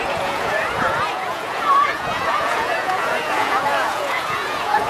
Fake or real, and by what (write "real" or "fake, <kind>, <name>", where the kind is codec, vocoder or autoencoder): fake, vocoder, Vocos